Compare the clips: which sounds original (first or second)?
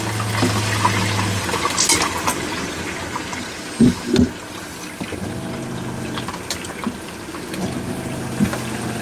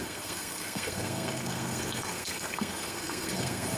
first